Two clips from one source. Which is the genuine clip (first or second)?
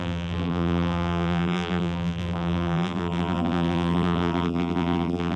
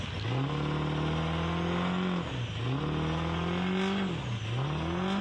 second